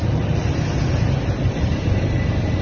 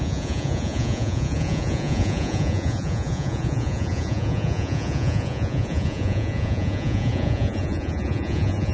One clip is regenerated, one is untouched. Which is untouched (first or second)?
first